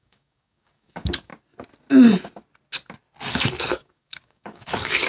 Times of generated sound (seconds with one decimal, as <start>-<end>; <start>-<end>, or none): 0.0-1.3; 3.3-5.1

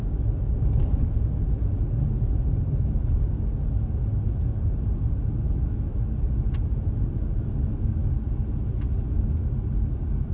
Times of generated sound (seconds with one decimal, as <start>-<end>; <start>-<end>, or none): none

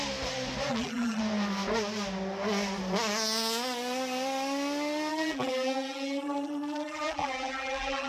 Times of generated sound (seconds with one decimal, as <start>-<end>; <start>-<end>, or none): 0.7-1.2; 5.1-8.1

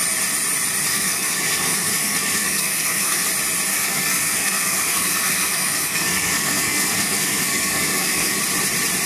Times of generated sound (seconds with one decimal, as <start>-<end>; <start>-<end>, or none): 0.9-3.3; 3.7-8.4